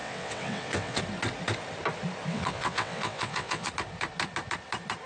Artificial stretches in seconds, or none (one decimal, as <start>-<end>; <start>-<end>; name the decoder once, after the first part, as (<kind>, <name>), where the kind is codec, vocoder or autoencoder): 0.0-1.0 (vocoder, WaveNeXt); 2.3-3.7